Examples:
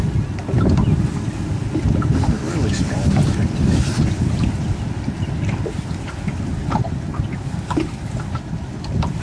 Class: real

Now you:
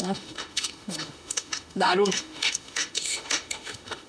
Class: fake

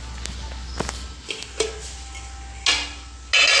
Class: real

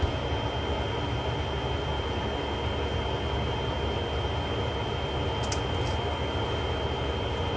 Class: real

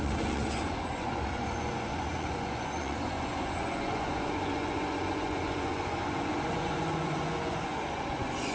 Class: fake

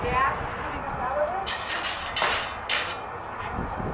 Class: real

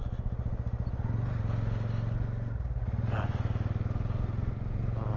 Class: real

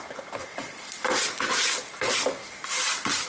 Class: real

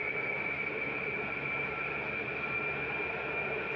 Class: real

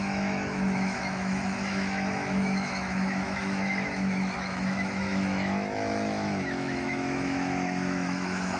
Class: fake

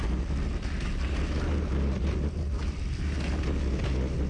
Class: real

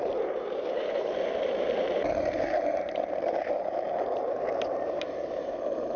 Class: fake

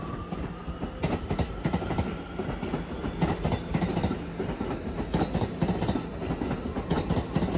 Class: real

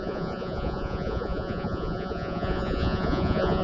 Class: fake